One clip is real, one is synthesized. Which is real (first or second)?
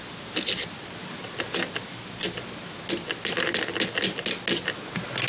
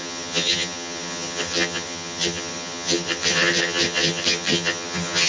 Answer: first